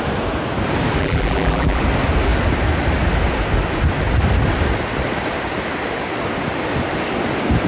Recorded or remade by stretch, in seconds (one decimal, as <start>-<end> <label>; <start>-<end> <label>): 0.0-1.0 recorded; 1.0-1.8 remade; 1.8-7.7 recorded